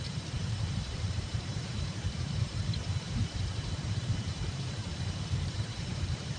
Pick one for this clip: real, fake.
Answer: fake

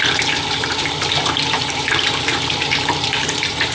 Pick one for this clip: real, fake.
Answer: fake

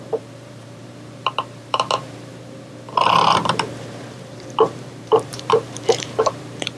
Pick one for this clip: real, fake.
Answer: fake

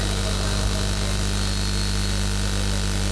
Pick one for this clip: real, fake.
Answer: fake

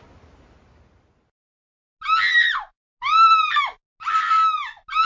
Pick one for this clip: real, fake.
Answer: real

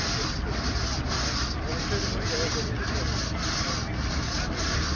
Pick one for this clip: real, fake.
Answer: real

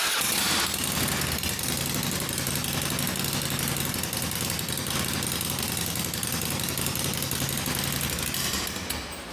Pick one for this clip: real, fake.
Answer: real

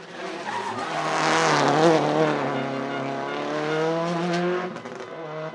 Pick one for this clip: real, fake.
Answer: real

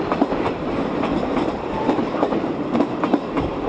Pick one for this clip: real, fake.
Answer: fake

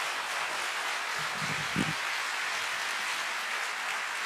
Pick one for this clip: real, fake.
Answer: real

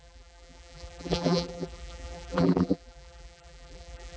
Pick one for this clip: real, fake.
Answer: fake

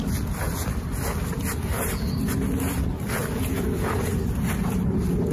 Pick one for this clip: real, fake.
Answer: real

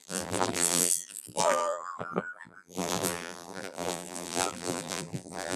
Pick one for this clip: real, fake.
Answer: fake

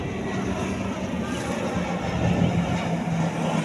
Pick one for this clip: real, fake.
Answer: real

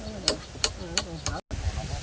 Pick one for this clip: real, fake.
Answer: real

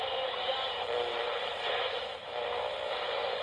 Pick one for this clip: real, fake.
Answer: fake